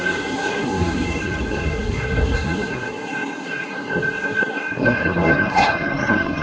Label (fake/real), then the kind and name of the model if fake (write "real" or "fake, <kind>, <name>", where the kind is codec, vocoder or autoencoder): fake, codec, SNAC